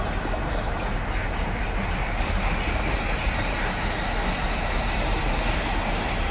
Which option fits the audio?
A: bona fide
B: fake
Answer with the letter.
A